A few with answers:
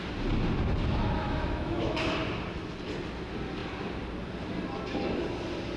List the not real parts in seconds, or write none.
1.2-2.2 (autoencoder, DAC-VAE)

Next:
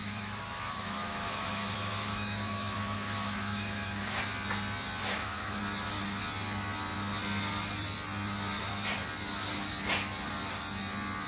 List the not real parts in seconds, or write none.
0.0-4.2 (autoencoder, DAC-VAE); 5.0-5.6

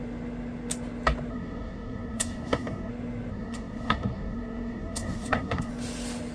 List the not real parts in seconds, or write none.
1.3-2.9 (codec, SNAC); 3.3-5.7